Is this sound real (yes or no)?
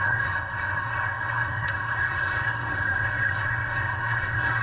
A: no